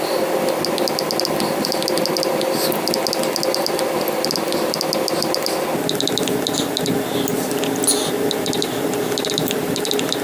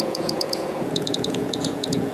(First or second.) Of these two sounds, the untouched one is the first